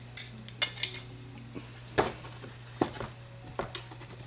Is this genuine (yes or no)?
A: yes